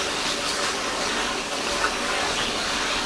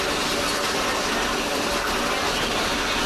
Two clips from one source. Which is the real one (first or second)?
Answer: second